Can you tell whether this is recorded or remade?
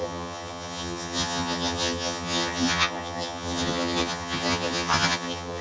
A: remade